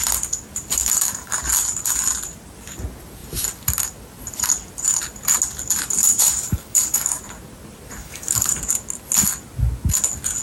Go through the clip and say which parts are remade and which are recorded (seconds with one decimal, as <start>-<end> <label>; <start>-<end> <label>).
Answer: 0.0-0.7 recorded; 0.7-1.4 remade; 1.4-6.0 recorded; 6.0-7.2 remade; 7.2-8.0 recorded; 8.0-8.6 remade; 8.6-10.4 recorded